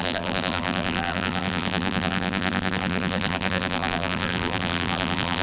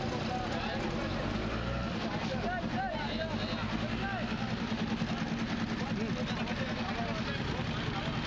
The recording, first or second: second